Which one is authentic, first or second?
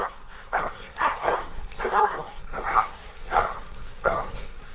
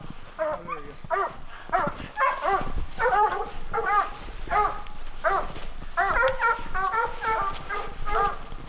second